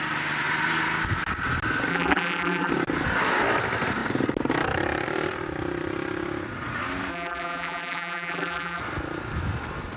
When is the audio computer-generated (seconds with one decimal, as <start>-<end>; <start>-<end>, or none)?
1.9-2.7; 7.1-8.8